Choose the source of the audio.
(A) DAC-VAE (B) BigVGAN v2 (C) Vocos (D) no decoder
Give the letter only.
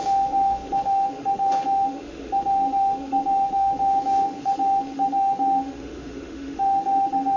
A